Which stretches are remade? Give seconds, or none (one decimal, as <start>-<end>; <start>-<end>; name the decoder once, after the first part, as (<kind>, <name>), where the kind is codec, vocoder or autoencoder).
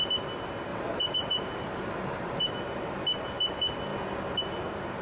0.7-2.5 (vocoder, BigVGAN v2)